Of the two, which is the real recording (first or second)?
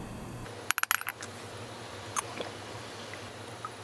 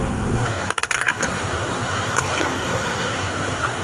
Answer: first